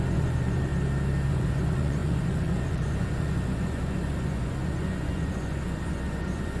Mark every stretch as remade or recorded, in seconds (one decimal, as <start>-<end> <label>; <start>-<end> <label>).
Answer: 0.0-0.7 remade; 0.7-1.3 recorded; 1.3-6.6 remade